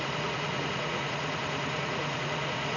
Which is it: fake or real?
fake